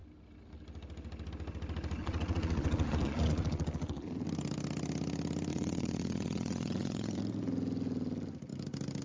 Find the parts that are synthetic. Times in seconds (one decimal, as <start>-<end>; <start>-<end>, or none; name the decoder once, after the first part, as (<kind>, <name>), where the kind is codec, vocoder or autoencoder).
2.0-4.1 (vocoder, Vocos); 5.5-7.2